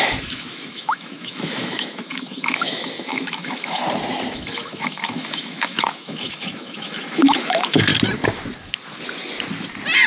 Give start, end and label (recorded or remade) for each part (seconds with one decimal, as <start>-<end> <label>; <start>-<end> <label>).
0.0-3.8 remade; 3.8-4.3 recorded; 4.3-7.9 remade; 7.9-10.1 recorded